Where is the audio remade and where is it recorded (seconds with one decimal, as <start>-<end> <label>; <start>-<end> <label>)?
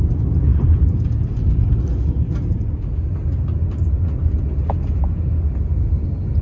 0.0-6.4 recorded